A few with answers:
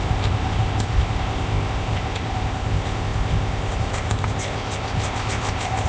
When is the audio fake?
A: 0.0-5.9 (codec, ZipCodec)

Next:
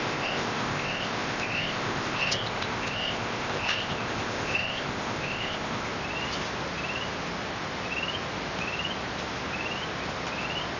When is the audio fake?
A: 0.0-5.9 (codec, ZipCodec)

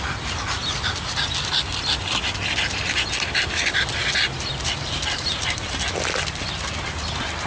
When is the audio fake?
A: none

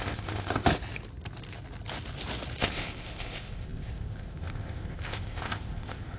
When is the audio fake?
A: 0.0-0.7 (codec, ZipCodec); 2.6-6.2

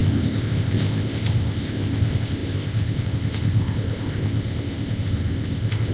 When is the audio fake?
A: 0.0-5.9 (codec, ZipCodec)

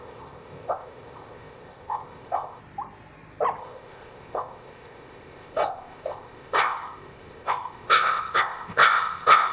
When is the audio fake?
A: 0.0-2.6 (codec, ZipCodec); 3.6-9.5

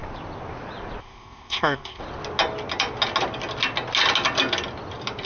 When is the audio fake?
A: 1.0-2.0 (codec, ZipCodec)